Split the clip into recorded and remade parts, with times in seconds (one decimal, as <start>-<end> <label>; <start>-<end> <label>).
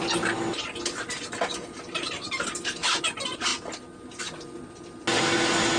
0.0-5.8 recorded